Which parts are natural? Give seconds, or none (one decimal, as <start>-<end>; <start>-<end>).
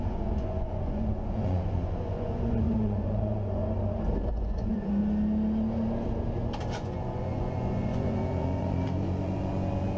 3.6-4.3; 5.0-6.7